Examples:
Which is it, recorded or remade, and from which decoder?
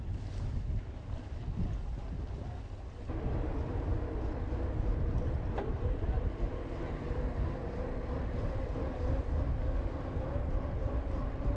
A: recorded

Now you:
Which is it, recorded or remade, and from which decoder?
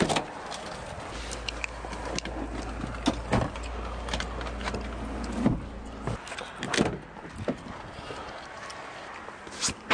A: recorded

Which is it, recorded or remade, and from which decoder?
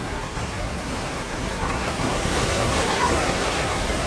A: remade, codec, SNAC